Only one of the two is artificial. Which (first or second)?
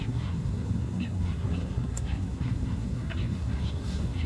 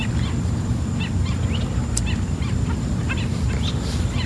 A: first